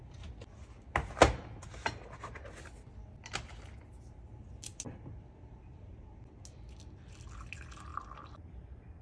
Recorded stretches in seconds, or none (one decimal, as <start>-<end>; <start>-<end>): 0.0-9.0